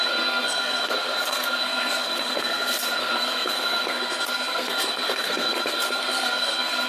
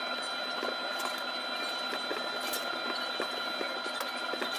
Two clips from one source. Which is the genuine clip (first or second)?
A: second